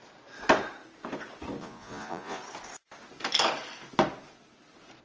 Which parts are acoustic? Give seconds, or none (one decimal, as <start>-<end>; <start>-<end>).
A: 0.0-1.6; 2.4-5.0

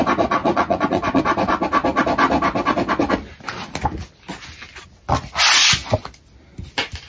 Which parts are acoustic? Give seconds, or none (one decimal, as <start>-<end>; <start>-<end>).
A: 0.0-0.4; 1.2-7.1